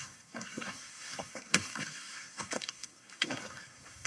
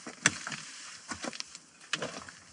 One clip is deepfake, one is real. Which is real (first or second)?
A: second